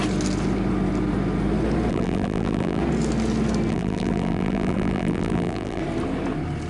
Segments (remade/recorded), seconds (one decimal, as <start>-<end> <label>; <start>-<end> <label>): 0.0-1.9 recorded; 1.9-2.8 remade; 2.8-3.7 recorded; 3.7-5.8 remade; 5.8-6.7 recorded